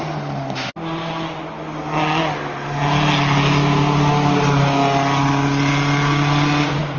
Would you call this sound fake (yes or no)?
no